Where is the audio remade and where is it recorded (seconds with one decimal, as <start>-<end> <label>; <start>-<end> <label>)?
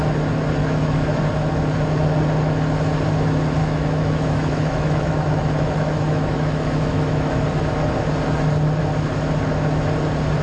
0.0-0.6 recorded; 0.6-1.2 remade; 1.2-3.6 recorded; 3.6-7.4 remade; 7.4-10.4 recorded